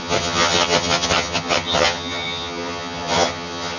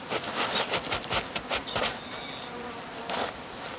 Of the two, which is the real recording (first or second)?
second